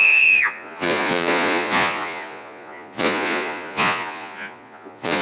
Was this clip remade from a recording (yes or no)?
yes